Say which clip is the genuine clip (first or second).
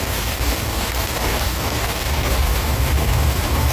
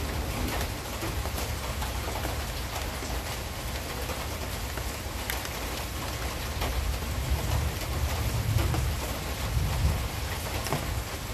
second